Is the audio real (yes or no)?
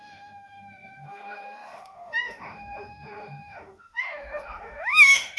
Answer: no